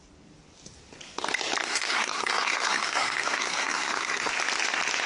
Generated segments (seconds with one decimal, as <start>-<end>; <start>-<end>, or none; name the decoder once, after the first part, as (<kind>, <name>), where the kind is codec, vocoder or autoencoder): 1.6-4.3 (codec, SNAC)